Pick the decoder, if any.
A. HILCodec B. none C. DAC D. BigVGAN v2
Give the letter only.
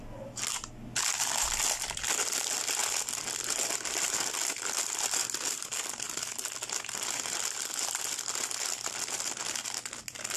B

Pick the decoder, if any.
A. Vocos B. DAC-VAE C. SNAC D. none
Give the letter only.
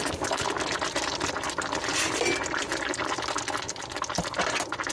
D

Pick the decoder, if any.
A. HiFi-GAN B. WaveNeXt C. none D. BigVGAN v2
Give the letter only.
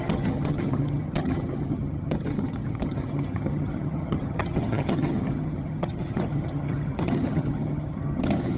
A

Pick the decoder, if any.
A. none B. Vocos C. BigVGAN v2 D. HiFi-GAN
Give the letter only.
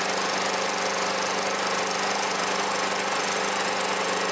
A